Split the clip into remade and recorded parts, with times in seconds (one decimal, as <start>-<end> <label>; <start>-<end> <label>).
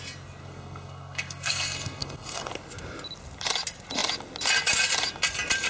0.0-0.4 recorded; 0.4-2.5 remade; 2.5-5.7 recorded